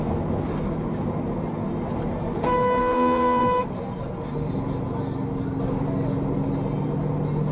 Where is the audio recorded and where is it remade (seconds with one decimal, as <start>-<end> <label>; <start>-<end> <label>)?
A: 0.0-2.8 recorded; 2.8-3.4 remade; 3.4-7.5 recorded